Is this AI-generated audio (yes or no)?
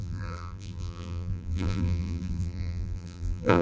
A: yes